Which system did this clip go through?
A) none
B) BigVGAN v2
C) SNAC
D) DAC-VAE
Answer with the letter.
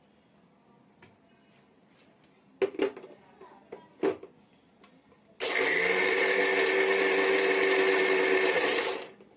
A